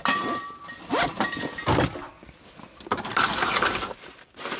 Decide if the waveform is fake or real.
real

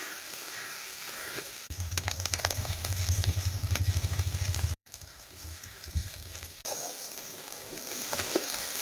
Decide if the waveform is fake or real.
fake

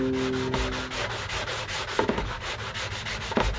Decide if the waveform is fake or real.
real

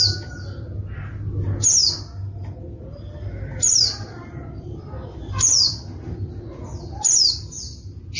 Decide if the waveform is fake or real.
real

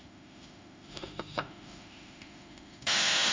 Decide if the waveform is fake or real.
fake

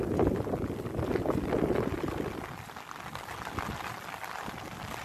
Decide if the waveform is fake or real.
real